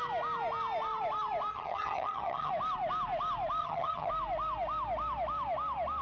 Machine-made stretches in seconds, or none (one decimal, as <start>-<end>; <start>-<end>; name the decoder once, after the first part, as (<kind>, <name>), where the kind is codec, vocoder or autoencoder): 1.5-2.5 (vocoder, HiFi-GAN); 3.6-4.1